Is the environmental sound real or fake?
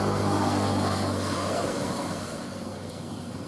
fake